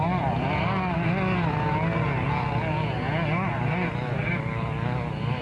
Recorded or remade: recorded